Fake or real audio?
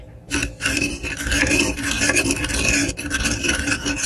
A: real